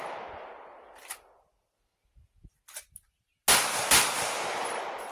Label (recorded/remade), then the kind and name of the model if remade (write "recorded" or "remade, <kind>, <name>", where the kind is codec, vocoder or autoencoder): recorded